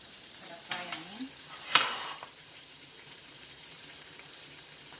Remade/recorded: remade